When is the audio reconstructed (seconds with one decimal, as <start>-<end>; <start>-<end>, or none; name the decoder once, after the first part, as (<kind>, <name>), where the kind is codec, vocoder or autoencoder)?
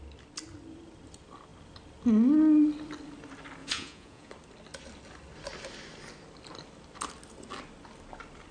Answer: 3.6-4.3 (vocoder, Vocos)